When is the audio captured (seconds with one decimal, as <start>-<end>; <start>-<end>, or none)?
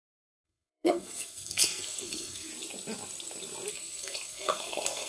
2.5-3.7